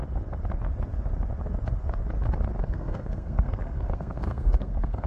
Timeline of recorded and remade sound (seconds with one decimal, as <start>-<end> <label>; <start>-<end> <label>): 0.0-2.6 recorded; 2.6-5.1 remade